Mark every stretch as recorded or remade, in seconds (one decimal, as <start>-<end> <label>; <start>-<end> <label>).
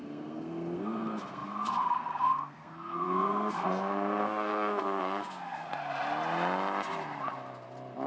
0.0-5.7 remade; 5.7-8.1 recorded